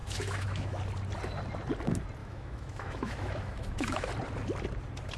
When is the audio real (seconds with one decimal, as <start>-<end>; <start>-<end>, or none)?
0.8-2.2; 4.1-5.2